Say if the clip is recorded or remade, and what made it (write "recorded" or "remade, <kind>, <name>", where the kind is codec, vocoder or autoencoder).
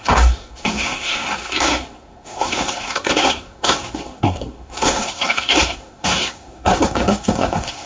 remade, codec, SNAC